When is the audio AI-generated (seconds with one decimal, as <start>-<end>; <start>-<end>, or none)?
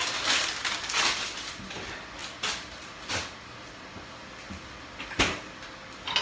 none